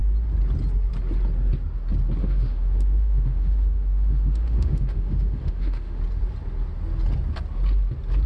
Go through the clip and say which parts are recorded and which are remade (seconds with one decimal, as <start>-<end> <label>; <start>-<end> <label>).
0.0-2.2 recorded; 2.2-6.0 remade; 6.0-8.3 recorded